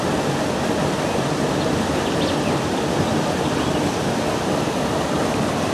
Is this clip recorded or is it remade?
recorded